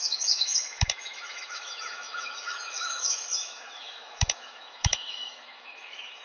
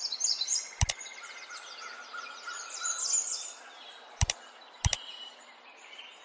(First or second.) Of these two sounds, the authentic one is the second